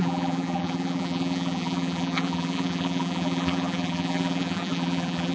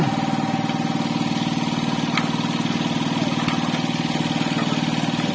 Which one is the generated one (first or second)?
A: first